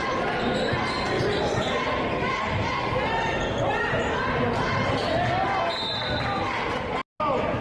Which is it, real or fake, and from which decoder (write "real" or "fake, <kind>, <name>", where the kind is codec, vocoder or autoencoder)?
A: real